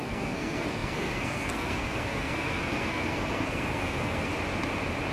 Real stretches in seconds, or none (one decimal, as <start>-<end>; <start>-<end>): 4.3-5.1